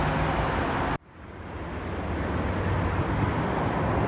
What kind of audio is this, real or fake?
real